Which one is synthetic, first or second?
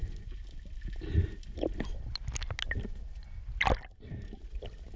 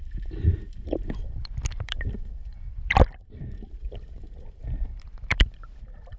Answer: second